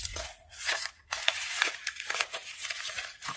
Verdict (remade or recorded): remade